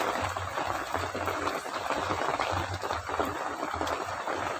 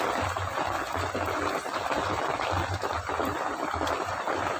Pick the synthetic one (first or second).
second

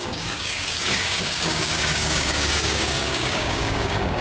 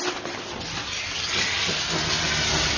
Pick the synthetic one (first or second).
first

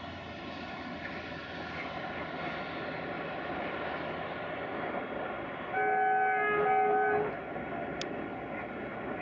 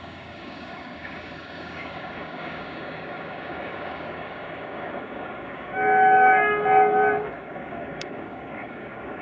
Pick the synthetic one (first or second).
second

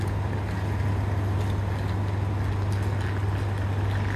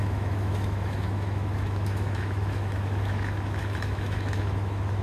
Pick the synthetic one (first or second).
second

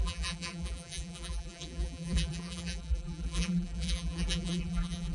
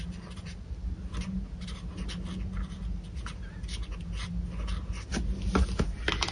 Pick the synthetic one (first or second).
first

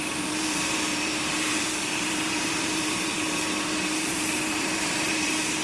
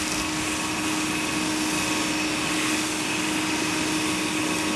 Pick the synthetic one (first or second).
first